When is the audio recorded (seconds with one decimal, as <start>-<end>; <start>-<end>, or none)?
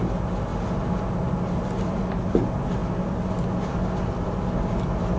0.0-5.2